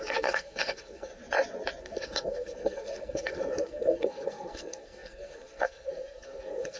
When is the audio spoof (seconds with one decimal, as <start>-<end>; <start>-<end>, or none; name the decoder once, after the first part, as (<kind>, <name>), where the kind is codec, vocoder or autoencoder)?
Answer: 0.0-1.1 (codec, SNAC); 1.8-6.8